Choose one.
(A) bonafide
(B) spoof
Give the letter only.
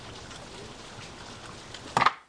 A